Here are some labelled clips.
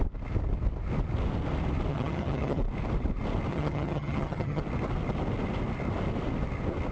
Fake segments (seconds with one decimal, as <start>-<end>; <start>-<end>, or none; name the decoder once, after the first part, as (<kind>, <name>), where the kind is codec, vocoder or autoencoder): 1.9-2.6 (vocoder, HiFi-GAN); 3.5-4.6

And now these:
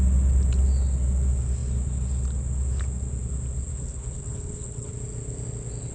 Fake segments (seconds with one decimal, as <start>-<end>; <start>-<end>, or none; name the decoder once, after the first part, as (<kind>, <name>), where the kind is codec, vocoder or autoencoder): 3.7-4.9 (codec, HILCodec)

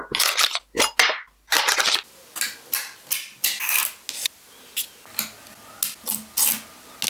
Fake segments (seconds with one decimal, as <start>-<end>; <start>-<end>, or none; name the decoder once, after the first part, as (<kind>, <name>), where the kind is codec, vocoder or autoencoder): none

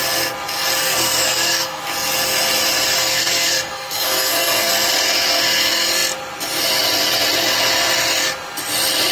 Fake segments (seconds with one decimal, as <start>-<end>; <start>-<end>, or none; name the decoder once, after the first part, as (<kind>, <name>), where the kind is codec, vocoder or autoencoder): 0.8-1.8 (codec, SNAC); 3.0-4.7